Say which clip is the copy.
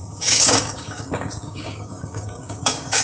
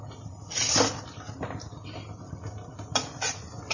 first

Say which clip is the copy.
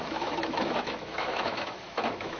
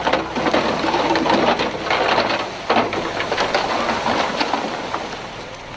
first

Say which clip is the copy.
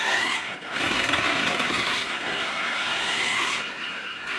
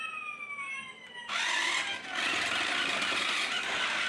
first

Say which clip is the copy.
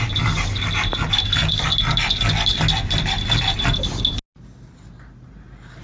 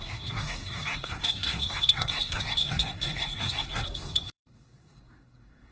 second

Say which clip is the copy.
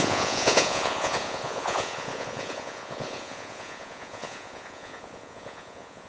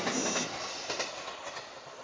first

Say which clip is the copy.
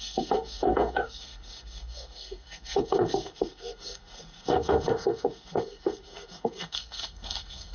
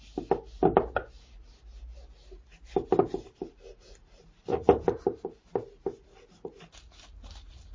first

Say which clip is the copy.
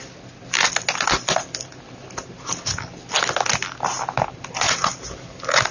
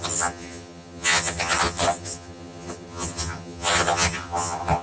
second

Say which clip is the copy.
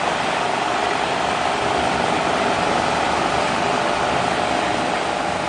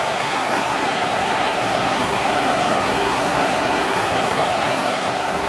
second